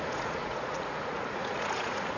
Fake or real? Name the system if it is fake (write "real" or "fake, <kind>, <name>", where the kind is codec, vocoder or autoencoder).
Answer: fake, vocoder, Vocos